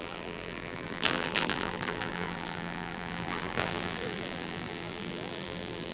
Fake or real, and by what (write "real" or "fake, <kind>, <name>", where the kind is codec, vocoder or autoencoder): fake, vocoder, BigVGAN v2